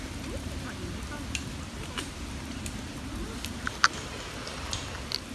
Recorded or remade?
recorded